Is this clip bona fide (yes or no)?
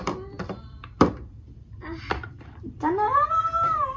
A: no